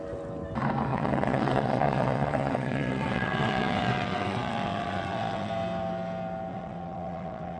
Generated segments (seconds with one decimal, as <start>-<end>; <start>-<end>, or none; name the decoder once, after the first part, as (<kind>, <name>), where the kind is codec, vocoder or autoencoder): 0.9-5.5 (vocoder, WaveNeXt); 6.5-7.6